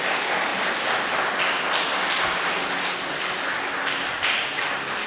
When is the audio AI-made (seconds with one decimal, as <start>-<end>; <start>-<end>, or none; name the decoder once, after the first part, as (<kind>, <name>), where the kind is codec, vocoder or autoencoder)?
none